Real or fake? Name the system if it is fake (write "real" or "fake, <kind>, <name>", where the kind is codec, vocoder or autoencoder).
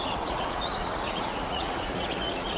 fake, vocoder, Vocos